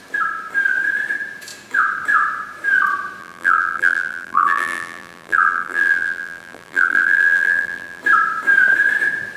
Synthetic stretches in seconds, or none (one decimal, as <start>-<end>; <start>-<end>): 3.2-8.0

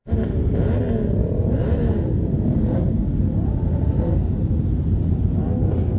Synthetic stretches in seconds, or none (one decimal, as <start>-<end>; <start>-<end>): 0.0-0.5; 1.2-3.0

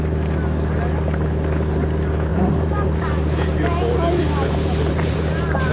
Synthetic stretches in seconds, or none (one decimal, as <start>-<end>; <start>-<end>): 2.3-5.7